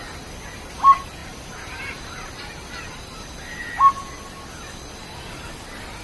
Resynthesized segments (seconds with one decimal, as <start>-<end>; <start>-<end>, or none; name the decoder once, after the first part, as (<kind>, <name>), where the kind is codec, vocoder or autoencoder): 1.2-2.0 (vocoder, BigVGAN v2)